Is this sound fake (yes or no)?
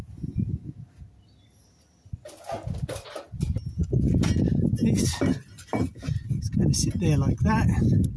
no